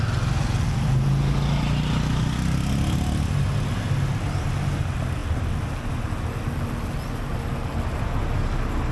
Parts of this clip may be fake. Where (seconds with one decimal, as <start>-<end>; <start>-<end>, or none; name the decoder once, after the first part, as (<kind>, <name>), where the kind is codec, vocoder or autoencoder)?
none

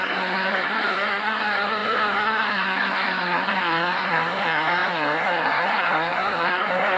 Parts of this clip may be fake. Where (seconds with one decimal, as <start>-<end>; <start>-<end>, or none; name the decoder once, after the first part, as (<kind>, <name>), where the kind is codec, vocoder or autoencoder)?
0.0-7.0 (codec, SNAC)

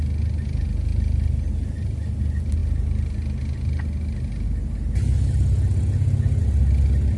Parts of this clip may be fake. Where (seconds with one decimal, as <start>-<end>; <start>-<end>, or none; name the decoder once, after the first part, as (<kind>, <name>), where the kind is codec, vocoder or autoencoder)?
none

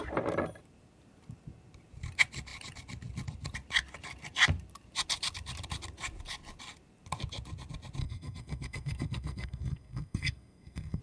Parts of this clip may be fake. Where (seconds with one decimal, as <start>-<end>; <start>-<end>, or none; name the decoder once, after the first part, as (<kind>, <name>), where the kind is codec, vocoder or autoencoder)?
8.0-11.0 (codec, SNAC)

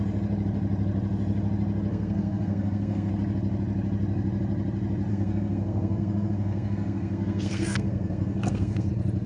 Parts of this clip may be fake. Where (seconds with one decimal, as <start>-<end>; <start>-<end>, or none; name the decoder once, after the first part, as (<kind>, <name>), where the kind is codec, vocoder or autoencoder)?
1.9-3.1 (codec, SNAC); 5.1-8.9

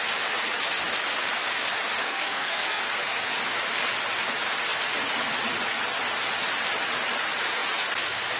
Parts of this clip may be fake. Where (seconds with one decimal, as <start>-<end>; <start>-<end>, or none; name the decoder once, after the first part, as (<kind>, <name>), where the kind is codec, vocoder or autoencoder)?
2.0-2.8 (codec, SNAC)

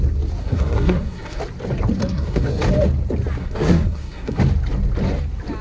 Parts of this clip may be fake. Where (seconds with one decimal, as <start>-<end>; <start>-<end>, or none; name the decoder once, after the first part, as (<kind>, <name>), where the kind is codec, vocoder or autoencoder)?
0.4-1.4 (codec, SNAC); 2.0-2.6; 3.4-4.4

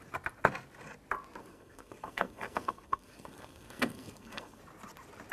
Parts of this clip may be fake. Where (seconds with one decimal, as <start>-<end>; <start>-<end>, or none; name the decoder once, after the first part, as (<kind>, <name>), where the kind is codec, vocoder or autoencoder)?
1.4-4.6 (codec, SNAC)